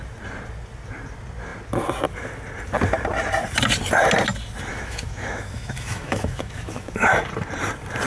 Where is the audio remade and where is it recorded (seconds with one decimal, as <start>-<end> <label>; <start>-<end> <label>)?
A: 0.0-4.7 recorded; 4.7-7.1 remade; 7.1-8.1 recorded